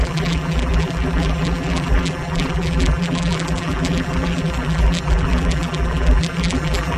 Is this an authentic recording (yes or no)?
no